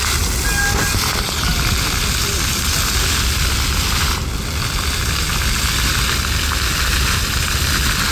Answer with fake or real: real